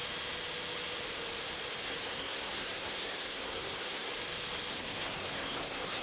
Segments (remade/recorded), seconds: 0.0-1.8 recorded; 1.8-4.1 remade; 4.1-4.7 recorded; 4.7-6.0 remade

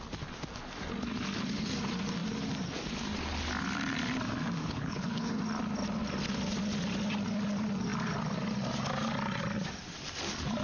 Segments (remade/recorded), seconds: 0.0-4.6 recorded; 4.6-5.4 remade; 5.4-10.6 recorded